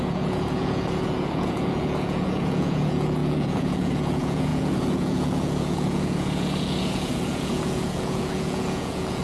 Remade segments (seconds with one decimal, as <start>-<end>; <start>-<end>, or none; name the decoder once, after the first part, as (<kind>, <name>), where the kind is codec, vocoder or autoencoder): 0.0-9.2 (vocoder, Vocos)